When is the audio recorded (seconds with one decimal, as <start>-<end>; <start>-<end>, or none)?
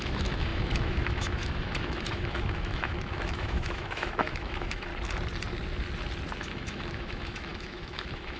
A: 4.9-6.4